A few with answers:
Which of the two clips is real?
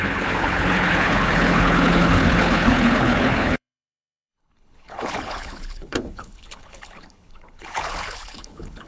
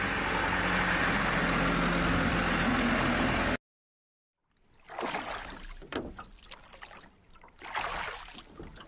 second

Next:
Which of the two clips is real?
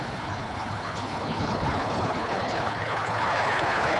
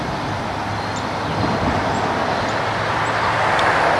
second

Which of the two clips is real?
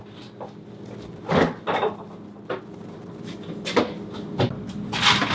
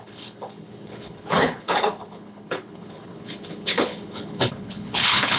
first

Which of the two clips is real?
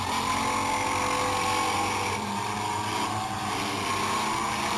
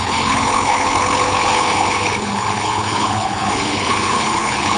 first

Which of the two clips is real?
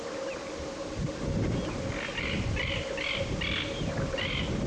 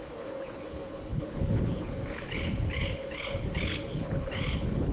first